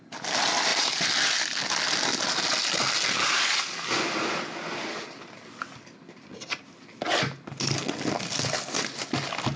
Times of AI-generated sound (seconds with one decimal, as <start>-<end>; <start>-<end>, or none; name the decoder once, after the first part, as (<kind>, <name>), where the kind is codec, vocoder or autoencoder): none